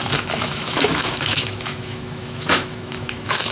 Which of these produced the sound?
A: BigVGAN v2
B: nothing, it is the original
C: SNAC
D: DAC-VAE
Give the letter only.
D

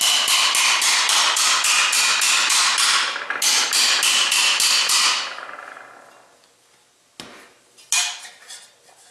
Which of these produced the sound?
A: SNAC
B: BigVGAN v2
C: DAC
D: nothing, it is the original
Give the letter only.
D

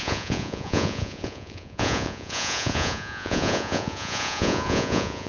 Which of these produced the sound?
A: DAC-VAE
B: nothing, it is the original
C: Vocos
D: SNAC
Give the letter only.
C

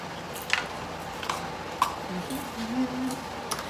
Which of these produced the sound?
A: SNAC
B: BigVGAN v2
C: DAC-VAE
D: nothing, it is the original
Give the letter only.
D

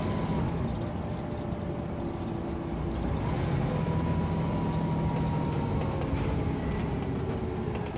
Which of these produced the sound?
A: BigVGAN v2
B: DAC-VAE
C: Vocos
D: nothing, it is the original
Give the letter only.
D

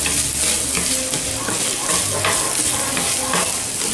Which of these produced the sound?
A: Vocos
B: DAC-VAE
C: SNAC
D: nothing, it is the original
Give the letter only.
D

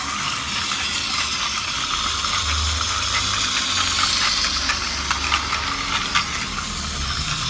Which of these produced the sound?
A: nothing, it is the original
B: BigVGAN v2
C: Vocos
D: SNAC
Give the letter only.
A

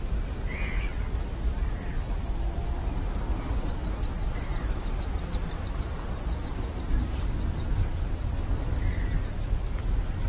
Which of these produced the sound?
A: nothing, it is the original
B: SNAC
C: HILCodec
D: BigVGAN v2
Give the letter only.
D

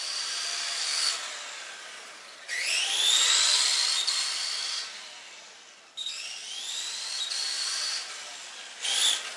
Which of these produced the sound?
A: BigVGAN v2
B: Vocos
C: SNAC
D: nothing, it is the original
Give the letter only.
D